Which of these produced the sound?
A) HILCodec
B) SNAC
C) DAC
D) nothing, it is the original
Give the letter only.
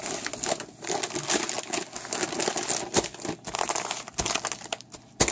D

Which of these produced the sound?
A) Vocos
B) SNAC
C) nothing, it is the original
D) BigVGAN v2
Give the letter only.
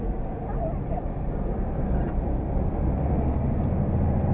D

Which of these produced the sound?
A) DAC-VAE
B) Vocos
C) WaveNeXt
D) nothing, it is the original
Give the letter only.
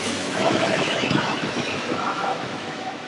A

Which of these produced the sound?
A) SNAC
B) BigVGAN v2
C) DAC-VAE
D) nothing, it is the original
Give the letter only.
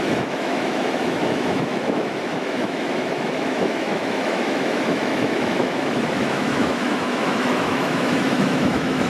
C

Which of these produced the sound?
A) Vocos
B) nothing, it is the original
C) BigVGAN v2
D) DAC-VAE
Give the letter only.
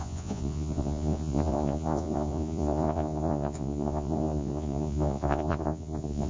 A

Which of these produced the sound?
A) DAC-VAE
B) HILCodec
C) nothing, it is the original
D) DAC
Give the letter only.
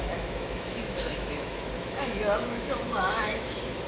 A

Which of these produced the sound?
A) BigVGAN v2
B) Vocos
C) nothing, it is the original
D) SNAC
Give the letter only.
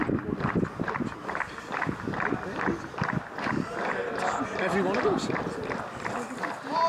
C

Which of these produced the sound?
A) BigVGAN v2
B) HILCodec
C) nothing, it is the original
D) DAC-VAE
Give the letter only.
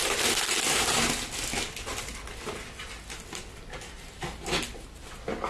C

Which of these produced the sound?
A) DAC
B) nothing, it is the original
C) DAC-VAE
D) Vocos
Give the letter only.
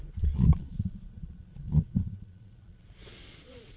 D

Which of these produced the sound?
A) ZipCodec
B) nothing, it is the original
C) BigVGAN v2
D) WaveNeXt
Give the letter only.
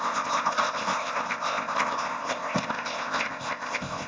A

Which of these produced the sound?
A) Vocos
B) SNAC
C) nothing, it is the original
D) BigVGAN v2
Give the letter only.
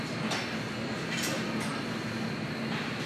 C